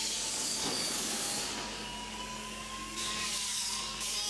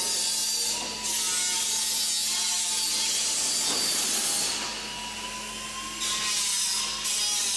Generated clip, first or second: first